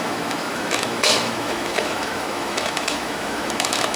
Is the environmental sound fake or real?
fake